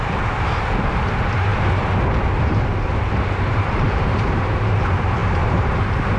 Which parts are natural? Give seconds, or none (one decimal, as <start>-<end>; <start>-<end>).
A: 1.5-3.5